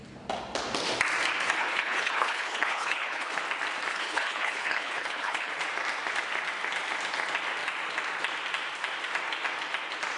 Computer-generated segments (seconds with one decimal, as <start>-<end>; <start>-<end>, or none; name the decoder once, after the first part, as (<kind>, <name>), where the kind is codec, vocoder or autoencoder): 1.6-3.4 (codec, HILCodec); 3.9-5.5